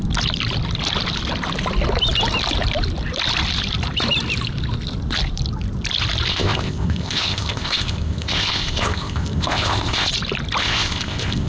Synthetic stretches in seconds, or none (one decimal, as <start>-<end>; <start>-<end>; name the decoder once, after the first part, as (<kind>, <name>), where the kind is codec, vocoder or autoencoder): 6.3-10.1 (codec, ZipCodec); 10.6-11.5

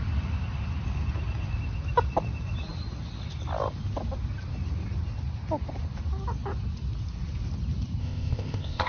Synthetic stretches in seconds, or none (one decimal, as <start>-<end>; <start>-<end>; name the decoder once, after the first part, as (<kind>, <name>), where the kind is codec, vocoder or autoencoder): 8.0-8.9 (codec, ZipCodec)

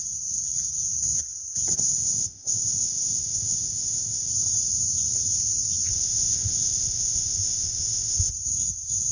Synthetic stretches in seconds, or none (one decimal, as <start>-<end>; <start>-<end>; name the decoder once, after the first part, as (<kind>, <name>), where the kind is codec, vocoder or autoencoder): 1.7-4.3 (codec, ZipCodec); 5.9-8.3

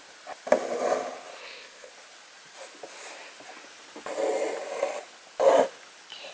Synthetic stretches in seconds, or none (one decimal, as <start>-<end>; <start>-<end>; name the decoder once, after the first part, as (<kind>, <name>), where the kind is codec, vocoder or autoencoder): 1.4-1.9 (codec, ZipCodec)